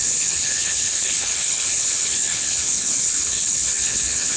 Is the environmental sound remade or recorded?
remade